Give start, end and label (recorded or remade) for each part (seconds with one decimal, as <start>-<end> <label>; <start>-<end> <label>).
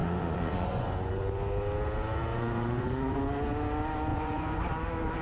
0.0-1.1 remade; 1.1-2.3 recorded; 2.3-3.2 remade; 3.2-4.1 recorded; 4.1-4.6 remade; 4.6-5.2 recorded